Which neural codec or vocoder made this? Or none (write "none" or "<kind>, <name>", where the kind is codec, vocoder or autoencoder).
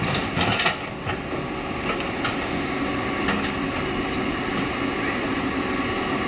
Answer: none